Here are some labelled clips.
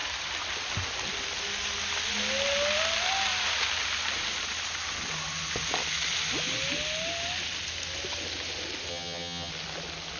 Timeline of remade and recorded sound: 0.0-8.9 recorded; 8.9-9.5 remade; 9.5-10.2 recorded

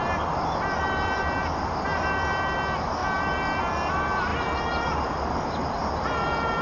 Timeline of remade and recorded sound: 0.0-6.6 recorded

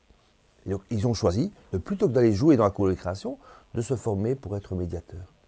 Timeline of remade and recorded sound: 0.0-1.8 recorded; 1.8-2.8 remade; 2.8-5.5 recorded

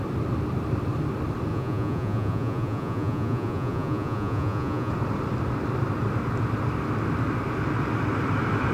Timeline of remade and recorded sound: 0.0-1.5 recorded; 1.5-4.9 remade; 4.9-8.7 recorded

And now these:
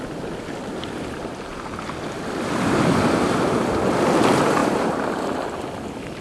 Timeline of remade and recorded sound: 0.0-4.6 recorded; 4.6-5.1 remade; 5.1-6.2 recorded